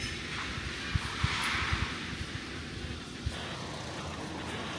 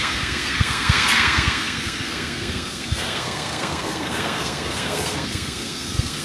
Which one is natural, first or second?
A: first